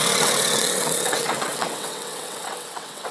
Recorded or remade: remade